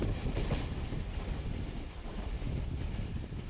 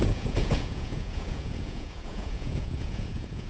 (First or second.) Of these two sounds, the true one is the first